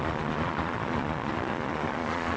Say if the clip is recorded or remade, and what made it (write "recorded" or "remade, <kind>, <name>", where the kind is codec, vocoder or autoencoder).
remade, vocoder, Vocos